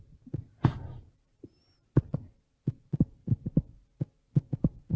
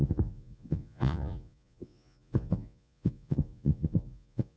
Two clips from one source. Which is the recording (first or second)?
first